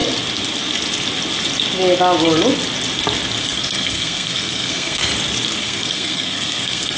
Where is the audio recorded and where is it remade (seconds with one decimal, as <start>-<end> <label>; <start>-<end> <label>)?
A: 0.0-3.4 recorded; 3.4-5.1 remade; 5.1-5.6 recorded; 5.6-7.0 remade